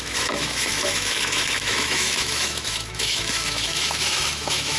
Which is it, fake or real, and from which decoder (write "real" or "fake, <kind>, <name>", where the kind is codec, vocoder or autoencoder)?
fake, autoencoder, DAC-VAE